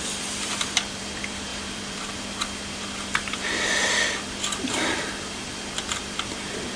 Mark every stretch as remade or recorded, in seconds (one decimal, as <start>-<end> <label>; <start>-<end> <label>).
0.0-5.5 remade; 5.5-6.8 recorded